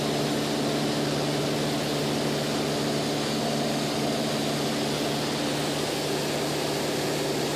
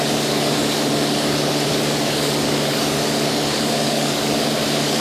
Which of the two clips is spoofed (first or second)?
second